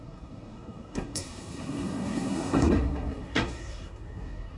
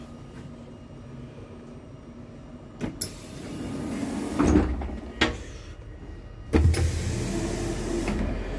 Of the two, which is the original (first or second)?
second